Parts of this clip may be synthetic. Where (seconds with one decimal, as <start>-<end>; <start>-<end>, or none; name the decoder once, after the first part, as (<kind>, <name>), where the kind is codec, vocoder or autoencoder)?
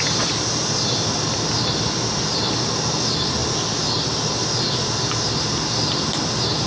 none